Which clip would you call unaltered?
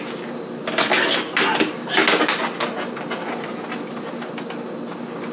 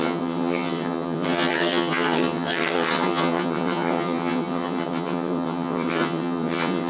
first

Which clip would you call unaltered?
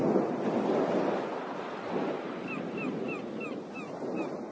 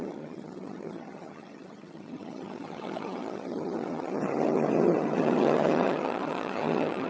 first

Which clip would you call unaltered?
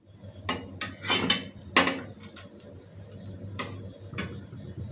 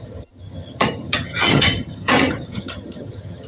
first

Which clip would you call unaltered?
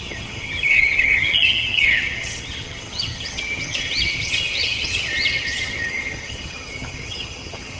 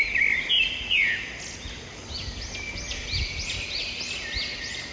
second